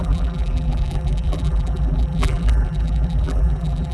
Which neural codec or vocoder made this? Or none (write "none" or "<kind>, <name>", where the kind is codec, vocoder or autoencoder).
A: vocoder, BigVGAN v2